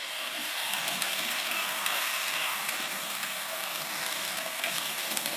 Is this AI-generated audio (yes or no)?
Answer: yes